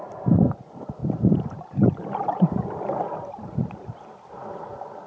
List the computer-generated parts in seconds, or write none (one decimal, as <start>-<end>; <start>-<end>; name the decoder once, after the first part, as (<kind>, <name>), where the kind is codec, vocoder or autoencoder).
1.0-4.1 (vocoder, BigVGAN v2)